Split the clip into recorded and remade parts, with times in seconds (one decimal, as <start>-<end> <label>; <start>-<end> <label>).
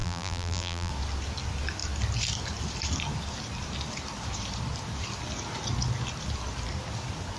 0.0-0.9 remade; 0.9-7.4 recorded